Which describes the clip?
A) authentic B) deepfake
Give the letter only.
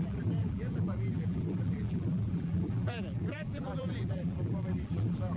B